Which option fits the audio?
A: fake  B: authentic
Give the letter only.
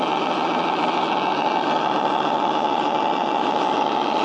A